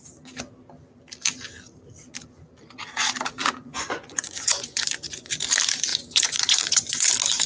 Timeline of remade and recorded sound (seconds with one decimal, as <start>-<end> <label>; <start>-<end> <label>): 0.0-3.4 recorded; 3.4-5.3 remade; 5.3-5.9 recorded; 5.9-7.1 remade; 7.1-7.5 recorded